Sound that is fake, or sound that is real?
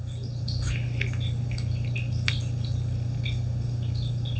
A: real